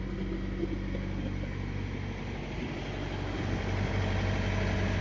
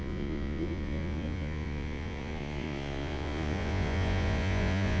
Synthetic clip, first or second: second